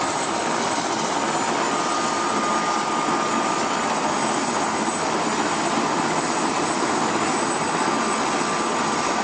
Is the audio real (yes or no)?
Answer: yes